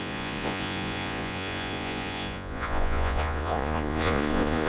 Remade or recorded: remade